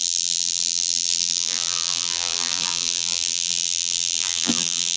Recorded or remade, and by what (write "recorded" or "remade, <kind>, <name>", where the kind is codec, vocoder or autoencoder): remade, vocoder, BigVGAN v2